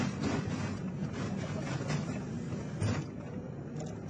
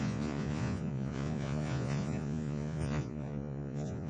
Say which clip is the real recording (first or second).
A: first